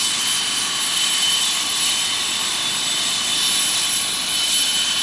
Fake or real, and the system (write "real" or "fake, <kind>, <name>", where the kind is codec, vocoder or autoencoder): real